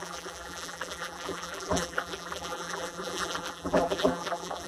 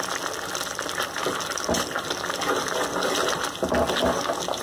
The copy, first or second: first